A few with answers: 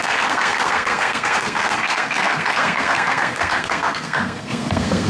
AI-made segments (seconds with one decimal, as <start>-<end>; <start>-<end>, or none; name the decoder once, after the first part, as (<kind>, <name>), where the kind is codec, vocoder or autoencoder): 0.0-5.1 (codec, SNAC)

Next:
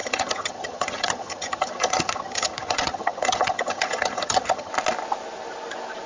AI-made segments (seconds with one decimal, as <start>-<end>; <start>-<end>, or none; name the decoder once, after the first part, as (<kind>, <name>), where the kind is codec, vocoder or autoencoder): 0.0-4.7 (vocoder, HiFi-GAN)

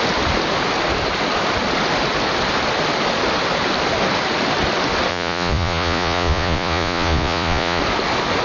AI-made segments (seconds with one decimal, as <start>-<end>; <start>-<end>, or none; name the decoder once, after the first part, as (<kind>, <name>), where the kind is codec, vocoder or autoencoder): 5.1-7.8 (vocoder, Vocos)

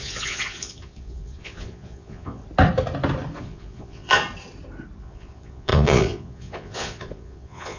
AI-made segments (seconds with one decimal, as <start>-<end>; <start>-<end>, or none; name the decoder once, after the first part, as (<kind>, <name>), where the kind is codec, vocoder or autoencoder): 0.0-2.4 (vocoder, Vocos); 3.4-4.2; 5.0-7.8

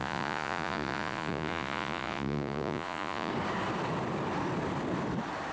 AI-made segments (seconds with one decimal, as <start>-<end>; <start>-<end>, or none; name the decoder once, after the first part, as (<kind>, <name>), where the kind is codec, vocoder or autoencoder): 0.0-3.3 (vocoder, Vocos)